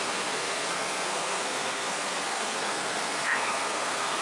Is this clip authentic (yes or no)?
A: no